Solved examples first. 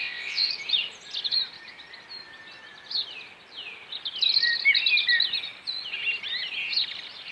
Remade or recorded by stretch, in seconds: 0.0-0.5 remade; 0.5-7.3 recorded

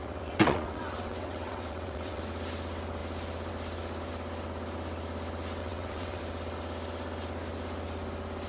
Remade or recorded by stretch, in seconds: 0.0-2.2 remade; 2.2-5.6 recorded; 5.6-6.2 remade; 6.2-8.5 recorded

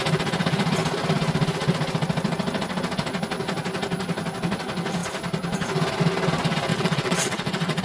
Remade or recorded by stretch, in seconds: 0.0-6.7 recorded; 6.7-7.8 remade